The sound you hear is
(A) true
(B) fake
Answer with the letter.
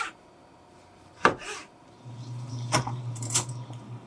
B